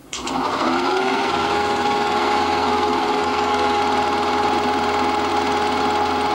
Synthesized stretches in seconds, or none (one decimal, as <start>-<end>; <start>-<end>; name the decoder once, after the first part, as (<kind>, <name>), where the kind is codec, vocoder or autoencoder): 0.0-3.8 (codec, SNAC)